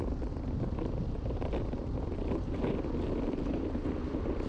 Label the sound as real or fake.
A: real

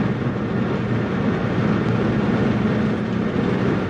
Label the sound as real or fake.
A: real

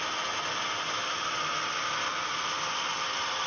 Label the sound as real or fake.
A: real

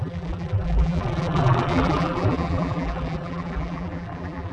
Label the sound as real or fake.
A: fake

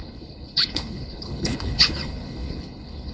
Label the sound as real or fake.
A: fake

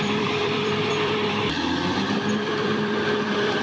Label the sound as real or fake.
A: fake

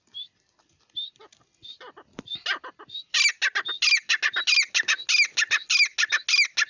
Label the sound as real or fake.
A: real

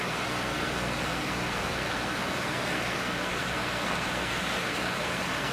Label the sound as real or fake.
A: fake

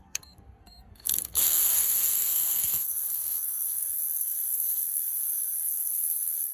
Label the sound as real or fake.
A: fake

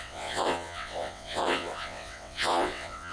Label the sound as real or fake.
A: fake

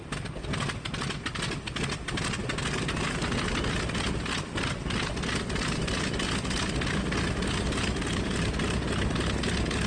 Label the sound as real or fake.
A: real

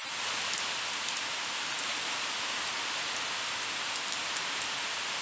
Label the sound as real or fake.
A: real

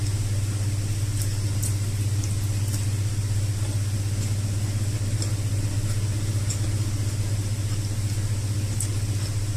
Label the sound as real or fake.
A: real